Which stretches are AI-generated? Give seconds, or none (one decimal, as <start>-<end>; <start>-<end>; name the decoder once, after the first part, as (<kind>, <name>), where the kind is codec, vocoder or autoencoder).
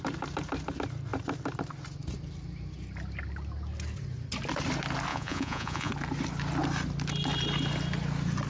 5.1-5.9 (vocoder, Vocos)